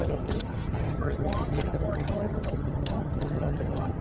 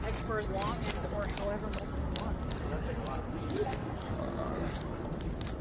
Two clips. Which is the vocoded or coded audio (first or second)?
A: first